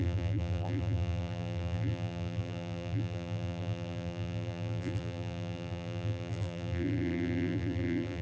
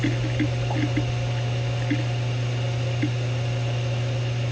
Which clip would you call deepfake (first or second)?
first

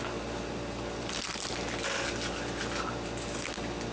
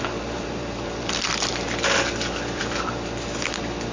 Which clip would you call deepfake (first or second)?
second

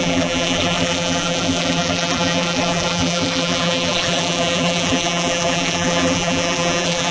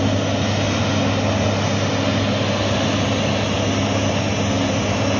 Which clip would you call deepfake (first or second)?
first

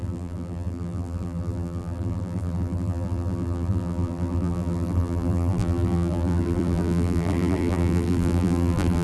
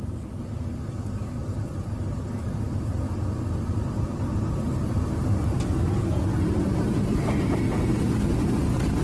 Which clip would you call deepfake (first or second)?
first